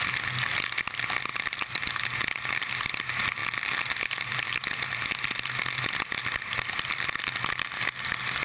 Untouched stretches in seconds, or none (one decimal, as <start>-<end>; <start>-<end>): 0.0-8.4